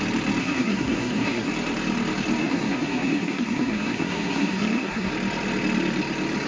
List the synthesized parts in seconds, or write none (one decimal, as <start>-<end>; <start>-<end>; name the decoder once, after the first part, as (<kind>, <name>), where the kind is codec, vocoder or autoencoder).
0.4-1.5 (codec, SNAC); 2.4-5.1